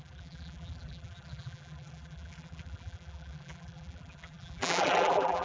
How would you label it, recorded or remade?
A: remade